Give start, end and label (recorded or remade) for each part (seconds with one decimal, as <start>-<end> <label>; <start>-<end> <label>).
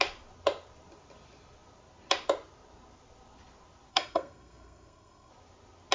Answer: 0.0-3.9 recorded; 3.9-5.3 remade; 5.3-5.9 recorded